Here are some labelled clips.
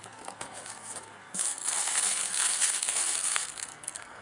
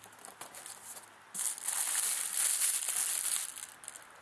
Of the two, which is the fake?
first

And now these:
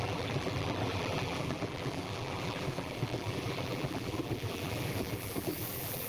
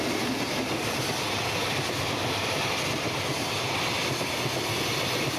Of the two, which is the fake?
first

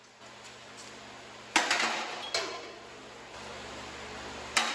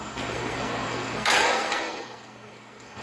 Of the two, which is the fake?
second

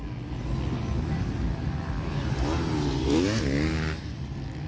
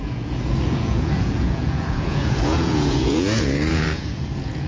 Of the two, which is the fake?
second